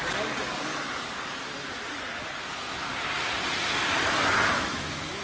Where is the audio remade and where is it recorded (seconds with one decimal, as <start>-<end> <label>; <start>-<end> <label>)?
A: 0.0-2.5 recorded; 2.5-2.9 remade; 2.9-4.5 recorded; 4.5-5.2 remade